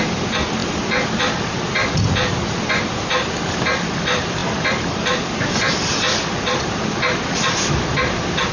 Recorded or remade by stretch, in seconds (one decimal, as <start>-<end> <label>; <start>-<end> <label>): 0.0-8.5 recorded